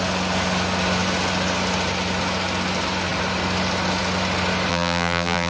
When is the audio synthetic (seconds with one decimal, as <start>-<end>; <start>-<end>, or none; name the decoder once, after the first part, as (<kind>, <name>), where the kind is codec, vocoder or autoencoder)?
4.7-5.5 (vocoder, BigVGAN v2)